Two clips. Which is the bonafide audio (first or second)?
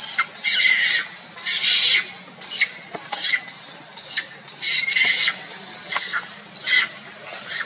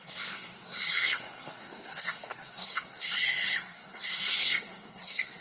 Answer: first